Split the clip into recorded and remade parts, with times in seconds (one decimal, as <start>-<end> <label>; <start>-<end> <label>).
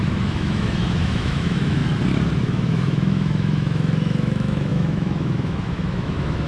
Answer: 0.0-1.8 remade; 1.8-2.4 recorded; 2.4-6.5 remade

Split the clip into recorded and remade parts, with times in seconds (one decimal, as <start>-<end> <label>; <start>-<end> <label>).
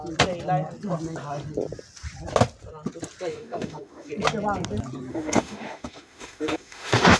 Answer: 0.0-3.3 recorded; 3.3-4.1 remade; 4.1-5.1 recorded; 5.1-7.2 remade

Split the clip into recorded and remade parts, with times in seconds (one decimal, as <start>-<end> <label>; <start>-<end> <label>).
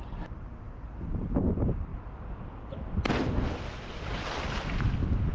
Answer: 0.0-1.9 recorded; 1.9-5.3 remade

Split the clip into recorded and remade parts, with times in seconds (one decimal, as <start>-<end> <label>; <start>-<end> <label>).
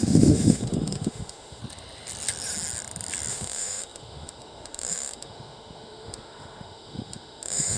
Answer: 0.0-1.6 remade; 1.6-3.3 recorded; 3.3-7.8 remade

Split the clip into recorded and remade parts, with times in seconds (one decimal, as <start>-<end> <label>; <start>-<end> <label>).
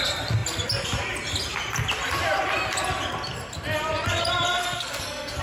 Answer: 0.0-4.6 recorded; 4.6-5.4 remade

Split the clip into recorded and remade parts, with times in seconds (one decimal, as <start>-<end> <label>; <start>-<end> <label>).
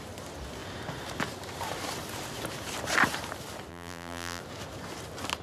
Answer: 0.0-3.7 recorded; 3.7-4.4 remade; 4.4-5.4 recorded